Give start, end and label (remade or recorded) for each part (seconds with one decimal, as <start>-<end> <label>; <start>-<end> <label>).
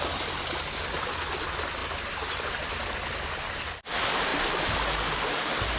0.0-5.8 recorded